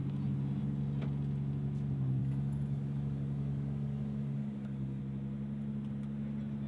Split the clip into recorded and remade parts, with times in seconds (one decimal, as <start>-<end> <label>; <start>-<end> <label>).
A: 0.0-2.2 recorded; 2.2-5.0 remade; 5.0-6.7 recorded